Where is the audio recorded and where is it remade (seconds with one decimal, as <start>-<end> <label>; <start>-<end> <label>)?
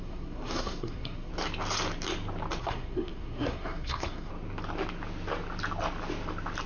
0.0-1.3 remade; 1.3-2.6 recorded; 2.6-4.3 remade; 4.3-6.7 recorded